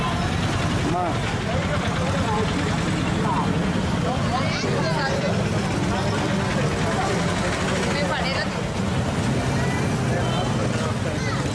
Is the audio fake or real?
real